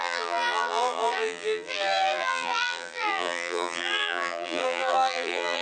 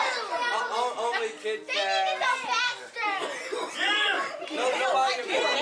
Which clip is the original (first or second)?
second